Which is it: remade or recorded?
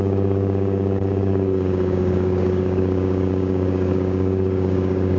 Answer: remade